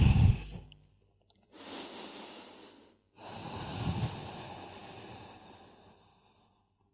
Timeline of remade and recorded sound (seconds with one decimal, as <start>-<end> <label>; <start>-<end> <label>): 0.0-3.4 recorded; 3.4-4.0 remade; 4.0-6.9 recorded